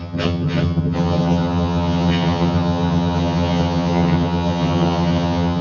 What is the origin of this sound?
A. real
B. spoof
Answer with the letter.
B